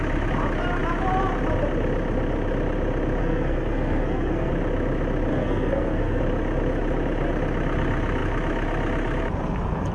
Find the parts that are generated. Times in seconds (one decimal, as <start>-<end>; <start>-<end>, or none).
3.2-4.5; 5.3-6.2